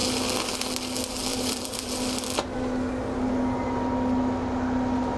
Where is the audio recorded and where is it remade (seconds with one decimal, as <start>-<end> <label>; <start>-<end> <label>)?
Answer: 0.0-1.3 recorded; 1.3-1.9 remade; 1.9-5.2 recorded